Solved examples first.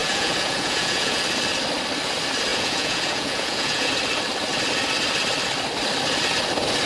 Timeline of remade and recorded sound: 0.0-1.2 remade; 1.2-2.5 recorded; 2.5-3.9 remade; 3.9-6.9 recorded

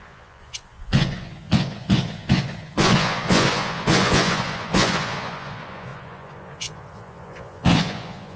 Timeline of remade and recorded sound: 0.0-8.4 remade